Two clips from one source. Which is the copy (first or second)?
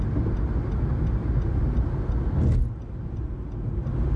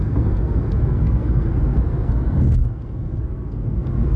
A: second